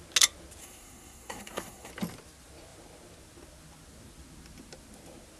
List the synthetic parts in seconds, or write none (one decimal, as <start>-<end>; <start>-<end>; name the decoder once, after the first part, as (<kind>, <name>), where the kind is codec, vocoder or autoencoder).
0.6-1.9 (codec, SNAC)